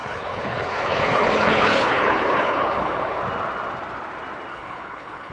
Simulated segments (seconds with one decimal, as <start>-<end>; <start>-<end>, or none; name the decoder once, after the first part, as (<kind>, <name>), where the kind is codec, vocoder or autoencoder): 0.0-3.2 (codec, HILCodec); 4.5-5.3